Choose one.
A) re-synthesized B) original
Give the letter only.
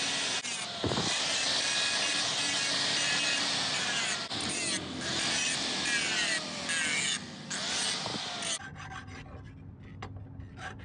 B